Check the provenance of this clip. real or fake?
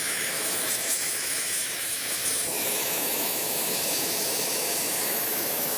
fake